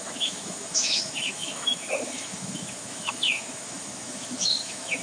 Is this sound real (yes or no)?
no